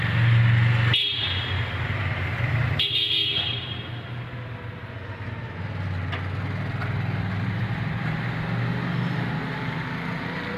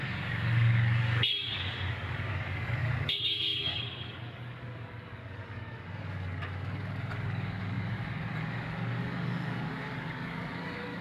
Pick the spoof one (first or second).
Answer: second